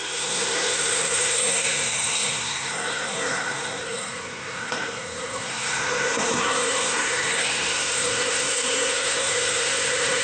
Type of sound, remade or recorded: remade